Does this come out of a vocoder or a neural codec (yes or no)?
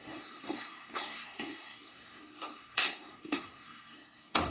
yes